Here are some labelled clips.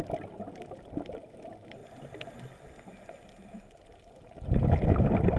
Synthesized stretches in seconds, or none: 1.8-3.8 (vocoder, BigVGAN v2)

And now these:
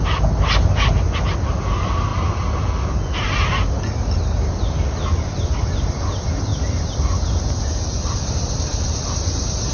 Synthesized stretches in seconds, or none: 6.5-9.1 (vocoder, BigVGAN v2)

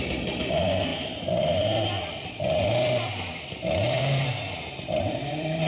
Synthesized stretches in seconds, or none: 0.0-5.7 (vocoder, BigVGAN v2)

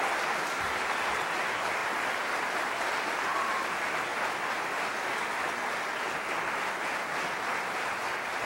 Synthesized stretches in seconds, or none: none

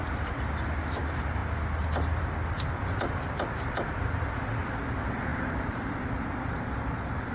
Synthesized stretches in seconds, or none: 1.4-4.8 (vocoder, BigVGAN v2); 5.3-6.0